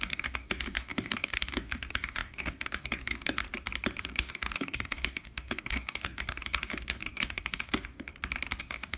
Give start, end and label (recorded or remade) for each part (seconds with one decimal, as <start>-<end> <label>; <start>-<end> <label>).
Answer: 0.0-3.4 remade; 3.4-4.0 recorded; 4.0-8.1 remade; 8.1-8.6 recorded; 8.6-9.0 remade